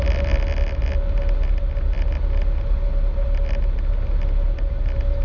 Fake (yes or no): no